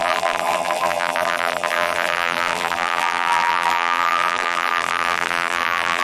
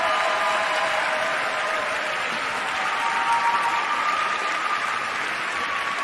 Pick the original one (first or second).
second